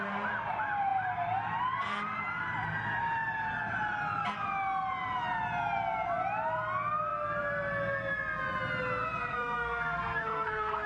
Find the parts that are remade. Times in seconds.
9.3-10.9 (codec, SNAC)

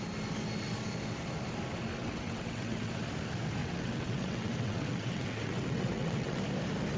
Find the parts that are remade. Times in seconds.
2.0-3.0 (vocoder, WaveNeXt); 3.6-6.4

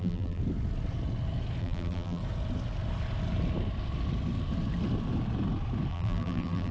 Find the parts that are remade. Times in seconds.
0.0-0.4 (vocoder, BigVGAN v2); 1.6-2.2; 5.9-6.7

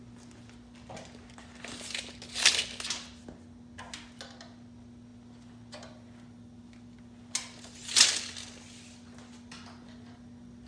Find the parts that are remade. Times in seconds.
none